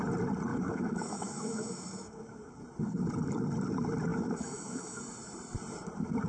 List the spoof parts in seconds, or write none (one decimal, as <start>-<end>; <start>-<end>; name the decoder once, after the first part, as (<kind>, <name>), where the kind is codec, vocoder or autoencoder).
0.5-2.6 (autoencoder, DAC-VAE); 4.1-5.0